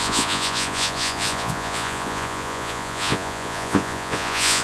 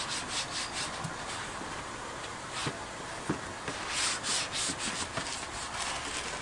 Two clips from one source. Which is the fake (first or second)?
first